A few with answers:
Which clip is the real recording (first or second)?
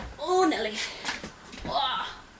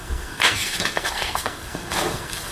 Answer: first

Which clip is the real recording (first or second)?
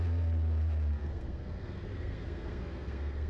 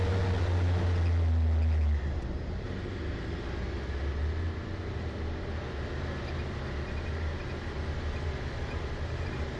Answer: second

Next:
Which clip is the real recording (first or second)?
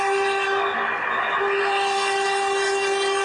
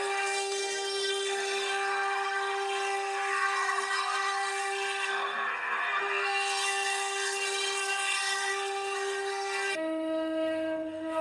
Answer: first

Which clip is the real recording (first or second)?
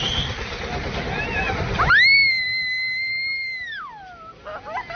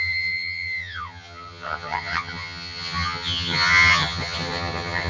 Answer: first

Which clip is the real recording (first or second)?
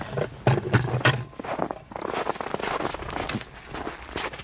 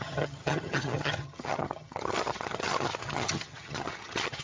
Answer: first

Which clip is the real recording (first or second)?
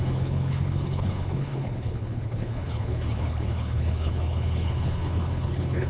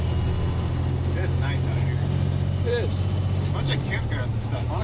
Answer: second